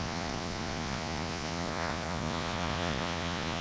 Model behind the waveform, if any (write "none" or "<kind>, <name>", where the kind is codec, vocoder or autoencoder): vocoder, Vocos